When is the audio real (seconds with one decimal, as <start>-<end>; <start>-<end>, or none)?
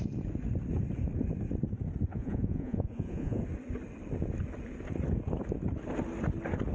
0.0-2.1; 3.4-6.7